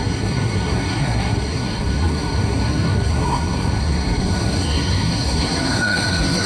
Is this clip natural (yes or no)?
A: no